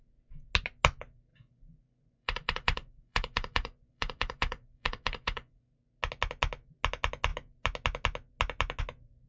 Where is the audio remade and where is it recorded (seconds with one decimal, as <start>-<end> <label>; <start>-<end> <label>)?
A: 0.0-1.3 recorded; 1.3-5.7 remade; 5.7-9.3 recorded